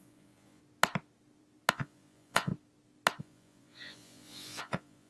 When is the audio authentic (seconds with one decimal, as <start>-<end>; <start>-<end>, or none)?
0.6-1.7; 2.5-3.2